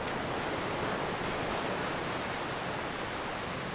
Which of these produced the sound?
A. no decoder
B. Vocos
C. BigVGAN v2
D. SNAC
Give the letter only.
A